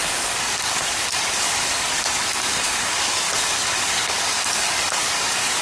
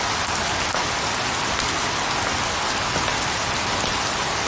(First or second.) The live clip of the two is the second